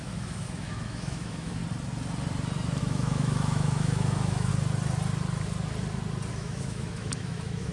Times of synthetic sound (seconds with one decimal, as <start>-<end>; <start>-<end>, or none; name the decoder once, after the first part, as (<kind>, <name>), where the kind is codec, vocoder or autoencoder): 0.0-1.6 (autoencoder, DAC-VAE); 2.8-4.5; 6.3-7.7